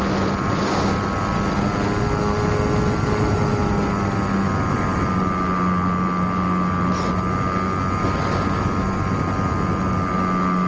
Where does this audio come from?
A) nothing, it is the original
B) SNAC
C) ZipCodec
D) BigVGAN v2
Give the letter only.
A